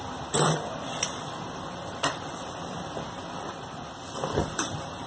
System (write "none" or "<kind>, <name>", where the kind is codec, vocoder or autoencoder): vocoder, BigVGAN v2